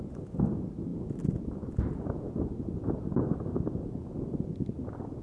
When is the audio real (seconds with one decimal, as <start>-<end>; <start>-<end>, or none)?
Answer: 0.0-5.2